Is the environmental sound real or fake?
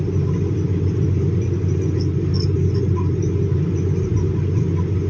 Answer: real